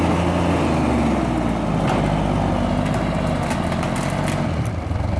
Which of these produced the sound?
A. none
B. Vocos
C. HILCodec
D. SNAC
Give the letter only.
A